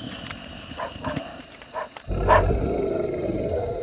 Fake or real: fake